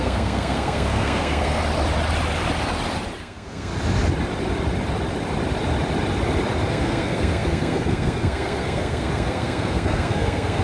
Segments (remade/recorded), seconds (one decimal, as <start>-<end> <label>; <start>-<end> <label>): 0.0-1.6 remade; 1.6-3.2 recorded; 3.2-3.7 remade; 3.7-6.7 recorded; 6.7-10.6 remade